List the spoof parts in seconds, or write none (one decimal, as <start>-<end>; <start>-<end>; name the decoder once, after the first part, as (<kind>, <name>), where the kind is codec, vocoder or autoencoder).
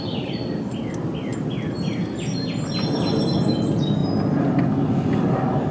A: none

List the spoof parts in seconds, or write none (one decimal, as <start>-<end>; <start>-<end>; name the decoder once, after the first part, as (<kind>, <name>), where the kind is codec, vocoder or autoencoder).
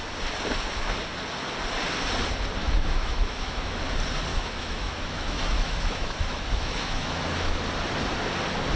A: 2.6-3.8 (autoencoder, DAC-VAE); 4.3-7.6